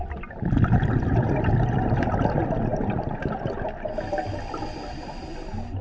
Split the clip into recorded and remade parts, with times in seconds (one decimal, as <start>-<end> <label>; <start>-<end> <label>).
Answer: 0.0-5.8 recorded